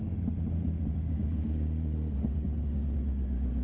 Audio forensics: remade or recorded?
recorded